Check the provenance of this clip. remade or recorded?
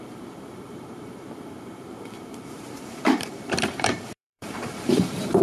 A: remade